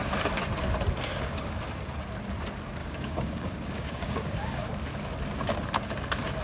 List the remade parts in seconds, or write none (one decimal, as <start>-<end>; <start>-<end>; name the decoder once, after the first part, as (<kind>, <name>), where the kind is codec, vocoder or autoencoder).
1.1-1.6 (codec, DAC); 2.8-4.7